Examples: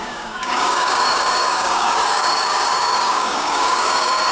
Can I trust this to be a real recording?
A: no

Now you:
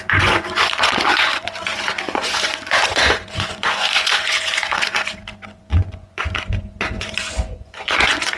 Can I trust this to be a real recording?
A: no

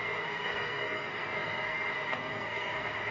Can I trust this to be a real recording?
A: no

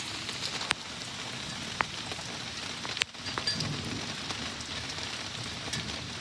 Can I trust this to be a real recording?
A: yes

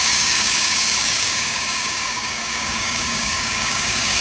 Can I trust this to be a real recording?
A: no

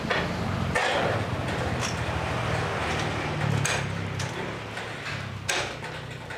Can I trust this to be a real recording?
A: yes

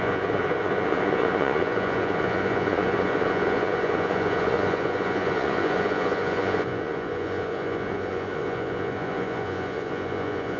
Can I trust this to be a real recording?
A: no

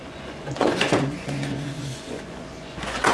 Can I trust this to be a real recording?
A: no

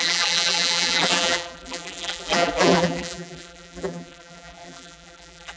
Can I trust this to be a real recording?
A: no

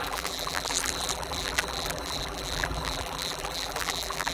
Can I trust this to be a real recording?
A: no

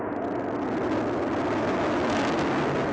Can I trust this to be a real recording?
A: yes